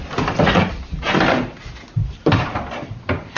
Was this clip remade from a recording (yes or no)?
no